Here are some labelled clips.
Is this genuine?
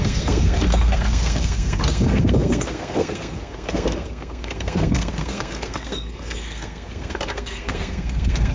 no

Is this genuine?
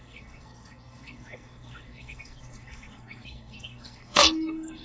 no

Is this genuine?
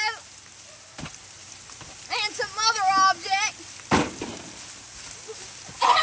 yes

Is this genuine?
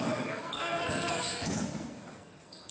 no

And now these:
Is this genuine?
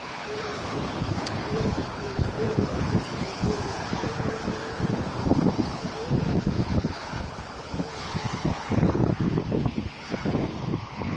no